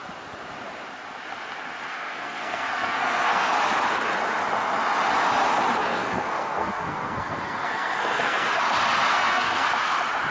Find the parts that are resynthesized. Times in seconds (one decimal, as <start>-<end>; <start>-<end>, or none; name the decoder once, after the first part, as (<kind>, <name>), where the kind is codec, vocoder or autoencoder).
1.9-3.5 (codec, SNAC); 5.8-8.6; 9.1-9.7